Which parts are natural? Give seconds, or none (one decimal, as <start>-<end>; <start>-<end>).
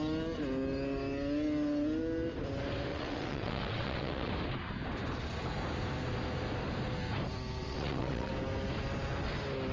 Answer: 0.0-2.9; 4.3-7.6; 8.3-9.7